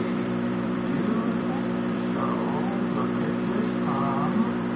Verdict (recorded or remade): remade